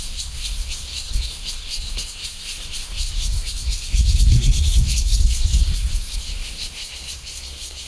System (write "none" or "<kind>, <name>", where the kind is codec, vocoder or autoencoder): codec, SNAC